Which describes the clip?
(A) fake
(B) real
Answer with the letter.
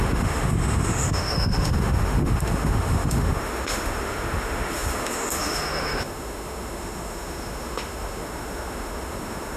A